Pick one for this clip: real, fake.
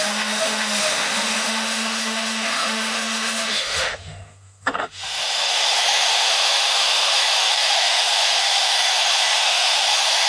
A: fake